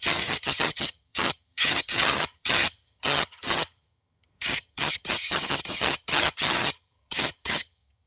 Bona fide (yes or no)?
no